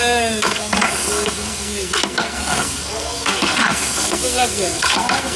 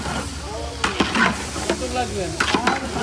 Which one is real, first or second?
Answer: second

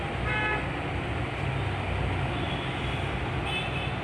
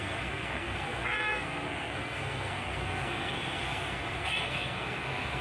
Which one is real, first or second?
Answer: first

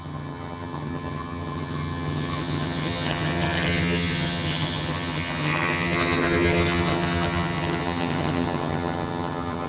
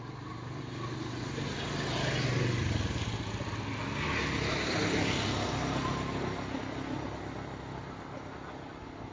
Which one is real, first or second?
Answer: second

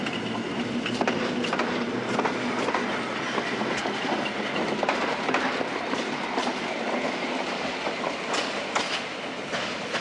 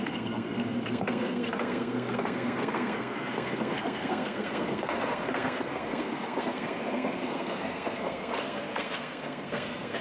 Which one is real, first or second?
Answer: first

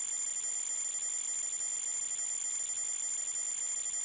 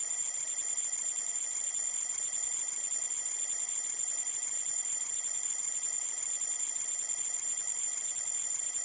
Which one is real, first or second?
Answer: first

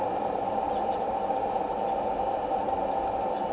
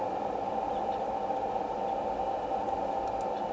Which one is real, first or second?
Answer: second